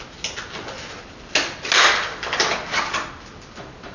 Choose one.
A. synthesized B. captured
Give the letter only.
B